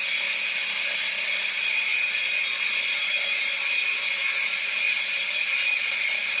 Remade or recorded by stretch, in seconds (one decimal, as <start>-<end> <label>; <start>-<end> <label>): 0.0-6.4 recorded